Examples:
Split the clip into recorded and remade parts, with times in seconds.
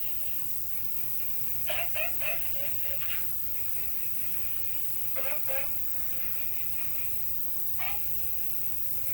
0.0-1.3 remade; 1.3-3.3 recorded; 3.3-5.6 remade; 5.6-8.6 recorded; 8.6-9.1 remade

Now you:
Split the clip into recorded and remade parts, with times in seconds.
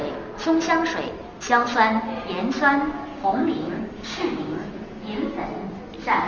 0.0-3.1 recorded; 3.1-4.7 remade; 4.7-6.3 recorded